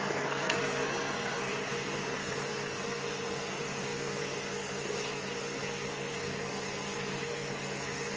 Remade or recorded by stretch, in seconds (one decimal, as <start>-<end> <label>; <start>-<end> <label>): 0.0-8.2 remade